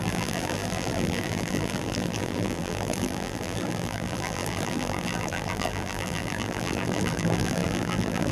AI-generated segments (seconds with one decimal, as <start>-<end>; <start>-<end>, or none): 0.0-8.3